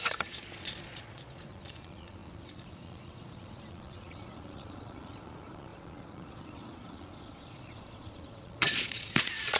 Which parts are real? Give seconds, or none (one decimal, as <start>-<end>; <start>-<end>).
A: none